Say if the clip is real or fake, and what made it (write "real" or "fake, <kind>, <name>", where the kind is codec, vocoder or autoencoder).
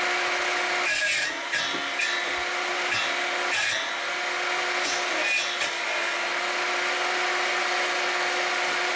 real